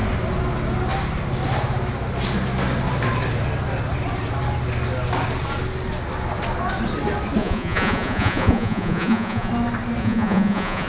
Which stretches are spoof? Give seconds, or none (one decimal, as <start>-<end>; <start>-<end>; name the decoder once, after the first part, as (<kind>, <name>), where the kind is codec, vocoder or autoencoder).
7.4-9.5 (vocoder, Vocos); 10.0-10.9